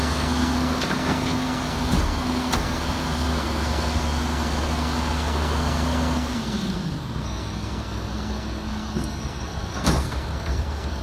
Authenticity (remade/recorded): remade